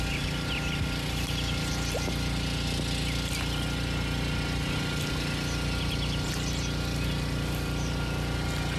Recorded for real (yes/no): yes